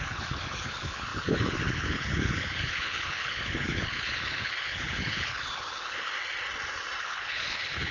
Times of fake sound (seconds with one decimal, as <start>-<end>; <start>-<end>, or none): 0.0-6.1; 7.0-7.9